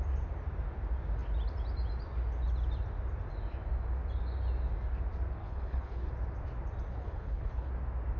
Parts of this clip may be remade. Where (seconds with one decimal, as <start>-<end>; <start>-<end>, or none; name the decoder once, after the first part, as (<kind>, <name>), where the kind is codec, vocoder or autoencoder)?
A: 5.4-6.1 (codec, HILCodec); 6.9-7.7